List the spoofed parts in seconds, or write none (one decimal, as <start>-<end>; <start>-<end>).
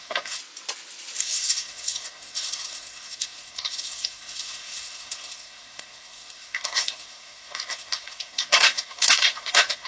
0.0-0.4; 1.2-9.9